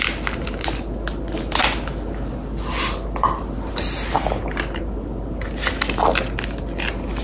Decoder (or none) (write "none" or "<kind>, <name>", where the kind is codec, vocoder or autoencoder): none